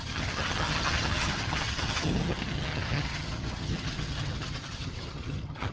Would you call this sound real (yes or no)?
no